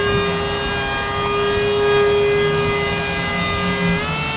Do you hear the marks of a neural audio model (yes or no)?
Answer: no